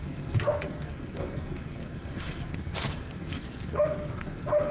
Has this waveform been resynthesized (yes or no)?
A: yes